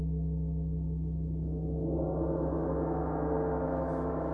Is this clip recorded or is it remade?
recorded